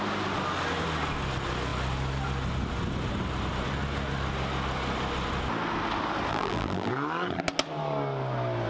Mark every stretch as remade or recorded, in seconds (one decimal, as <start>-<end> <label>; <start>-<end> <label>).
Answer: 0.0-6.3 recorded; 6.3-6.9 remade; 6.9-8.7 recorded